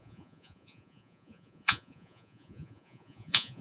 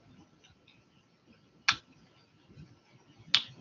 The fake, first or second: first